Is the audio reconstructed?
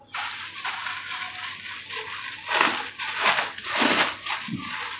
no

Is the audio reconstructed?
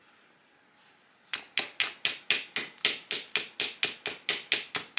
no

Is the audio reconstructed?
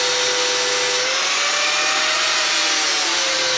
no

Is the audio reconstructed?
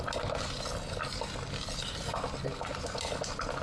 no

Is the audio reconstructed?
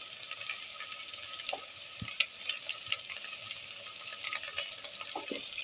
no